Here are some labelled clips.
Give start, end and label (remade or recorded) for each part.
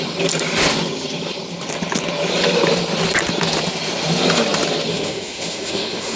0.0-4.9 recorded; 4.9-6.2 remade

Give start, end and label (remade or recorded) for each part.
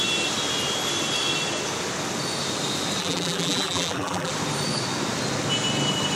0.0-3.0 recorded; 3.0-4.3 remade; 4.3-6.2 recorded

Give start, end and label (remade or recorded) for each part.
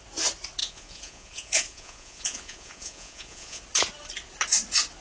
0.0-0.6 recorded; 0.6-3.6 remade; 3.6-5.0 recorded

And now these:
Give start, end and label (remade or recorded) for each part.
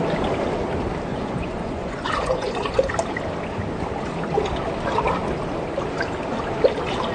0.0-1.1 recorded; 1.1-2.9 remade; 2.9-7.1 recorded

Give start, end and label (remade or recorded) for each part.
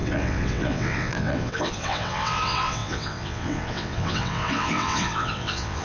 0.0-5.8 remade